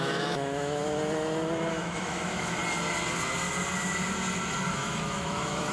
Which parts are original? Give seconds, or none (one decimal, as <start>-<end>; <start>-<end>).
0.8-1.7; 2.6-4.7